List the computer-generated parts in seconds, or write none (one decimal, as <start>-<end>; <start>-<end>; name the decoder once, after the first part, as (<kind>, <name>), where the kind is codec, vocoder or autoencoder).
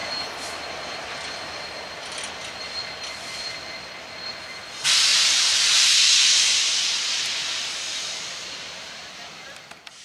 5.1-6.4 (vocoder, BigVGAN v2)